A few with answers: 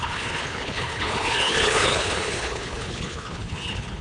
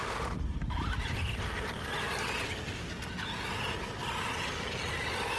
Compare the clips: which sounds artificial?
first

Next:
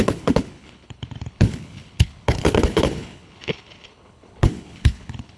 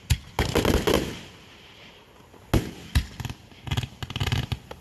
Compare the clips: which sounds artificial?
first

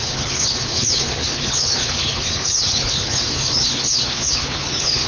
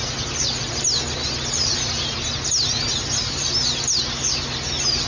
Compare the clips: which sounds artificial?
first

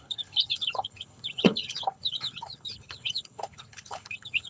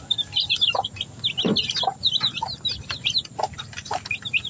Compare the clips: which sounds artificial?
first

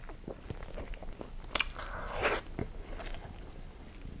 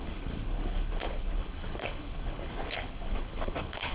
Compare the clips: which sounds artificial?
second